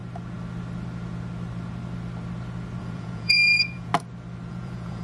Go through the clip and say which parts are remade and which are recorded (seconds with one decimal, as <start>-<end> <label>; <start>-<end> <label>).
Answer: 0.0-2.8 recorded; 2.8-3.9 remade; 3.9-4.5 recorded; 4.5-5.0 remade